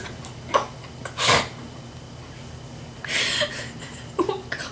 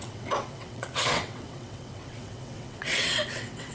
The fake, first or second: second